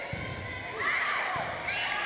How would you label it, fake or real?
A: real